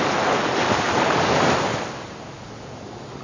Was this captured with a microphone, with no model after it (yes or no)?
yes